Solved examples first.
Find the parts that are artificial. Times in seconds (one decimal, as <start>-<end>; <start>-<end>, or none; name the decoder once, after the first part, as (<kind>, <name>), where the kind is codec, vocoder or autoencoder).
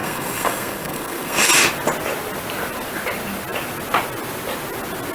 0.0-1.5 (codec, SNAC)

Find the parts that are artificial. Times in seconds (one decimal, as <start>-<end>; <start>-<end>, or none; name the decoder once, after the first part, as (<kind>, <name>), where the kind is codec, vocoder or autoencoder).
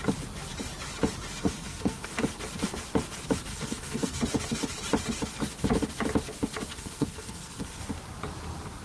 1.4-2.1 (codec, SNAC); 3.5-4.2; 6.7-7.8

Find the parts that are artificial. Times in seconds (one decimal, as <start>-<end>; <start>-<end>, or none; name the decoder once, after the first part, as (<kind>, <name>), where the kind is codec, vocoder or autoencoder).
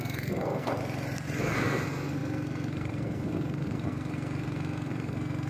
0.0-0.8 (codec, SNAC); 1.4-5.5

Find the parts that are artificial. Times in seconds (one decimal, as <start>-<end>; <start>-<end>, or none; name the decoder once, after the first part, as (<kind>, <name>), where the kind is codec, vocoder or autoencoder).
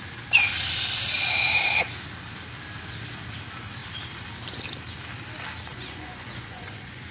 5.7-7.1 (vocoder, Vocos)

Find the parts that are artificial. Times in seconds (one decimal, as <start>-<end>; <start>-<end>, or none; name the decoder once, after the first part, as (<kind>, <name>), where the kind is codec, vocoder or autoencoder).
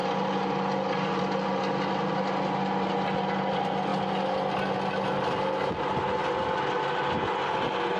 none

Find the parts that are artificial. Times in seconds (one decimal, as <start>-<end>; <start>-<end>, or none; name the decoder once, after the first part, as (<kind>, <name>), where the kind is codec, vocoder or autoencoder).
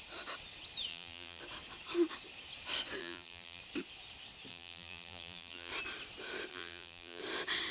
0.9-1.4 (vocoder, BigVGAN v2); 3.0-3.6; 4.5-5.7; 6.5-7.2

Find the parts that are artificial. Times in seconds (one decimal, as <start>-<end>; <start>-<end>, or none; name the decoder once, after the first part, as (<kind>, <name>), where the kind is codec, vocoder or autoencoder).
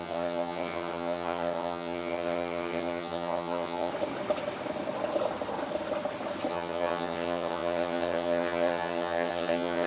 0.0-3.9 (vocoder, HiFi-GAN); 6.5-9.9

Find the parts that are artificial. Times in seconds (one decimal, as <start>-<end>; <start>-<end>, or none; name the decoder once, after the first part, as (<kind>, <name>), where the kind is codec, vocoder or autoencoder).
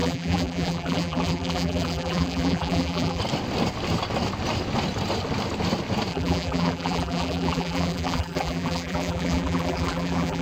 0.0-3.2 (vocoder, BigVGAN v2); 6.1-10.4